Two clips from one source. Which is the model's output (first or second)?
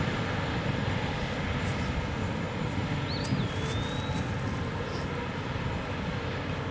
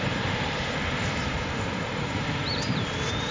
second